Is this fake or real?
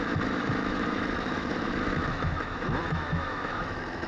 fake